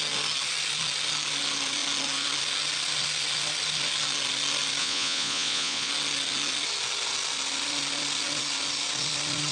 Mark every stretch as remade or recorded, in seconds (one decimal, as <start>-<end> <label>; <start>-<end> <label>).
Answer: 0.0-4.8 recorded; 4.8-5.9 remade; 5.9-9.5 recorded